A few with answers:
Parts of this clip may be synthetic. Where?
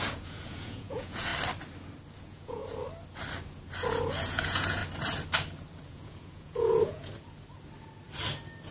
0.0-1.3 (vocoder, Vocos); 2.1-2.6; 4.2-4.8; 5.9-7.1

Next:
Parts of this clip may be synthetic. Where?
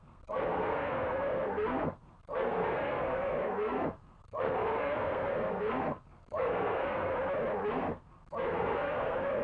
0.0-7.1 (codec, SNAC); 7.7-9.4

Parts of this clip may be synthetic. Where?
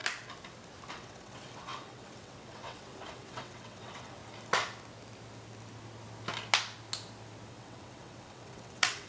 0.9-4.2 (vocoder, WaveNeXt); 7.5-9.1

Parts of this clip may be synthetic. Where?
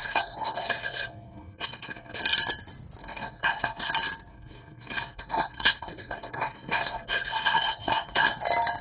0.0-2.2 (codec, SNAC); 3.0-3.9; 4.3-8.4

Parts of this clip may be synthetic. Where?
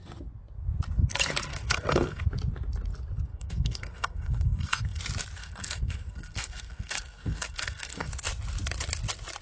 1.5-2.2 (codec, SNAC); 3.3-5.0; 5.4-8.1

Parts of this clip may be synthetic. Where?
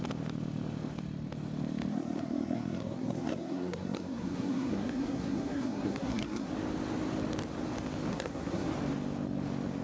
1.9-6.5 (codec, SNAC); 8.1-8.7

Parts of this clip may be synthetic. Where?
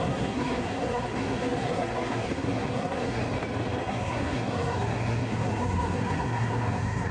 0.0-3.2 (codec, SNAC); 3.9-7.1